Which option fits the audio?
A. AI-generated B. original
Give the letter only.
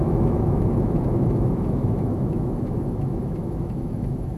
A